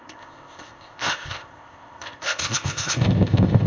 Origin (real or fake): fake